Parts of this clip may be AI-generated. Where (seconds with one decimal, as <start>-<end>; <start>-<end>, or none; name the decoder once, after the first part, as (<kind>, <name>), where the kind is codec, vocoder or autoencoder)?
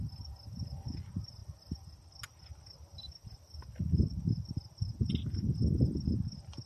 none